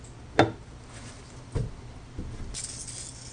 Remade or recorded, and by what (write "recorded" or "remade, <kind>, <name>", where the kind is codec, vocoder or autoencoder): recorded